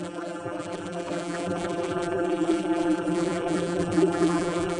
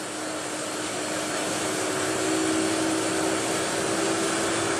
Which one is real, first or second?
second